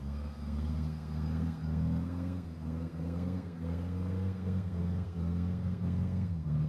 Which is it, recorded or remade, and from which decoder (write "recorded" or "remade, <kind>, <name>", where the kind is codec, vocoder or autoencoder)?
remade, codec, SNAC